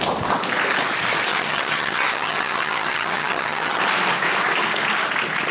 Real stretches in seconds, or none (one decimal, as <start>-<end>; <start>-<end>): 0.0-1.3; 3.8-5.5